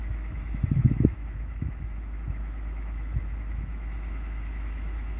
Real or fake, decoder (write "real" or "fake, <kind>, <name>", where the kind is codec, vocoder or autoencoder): fake, autoencoder, DAC-VAE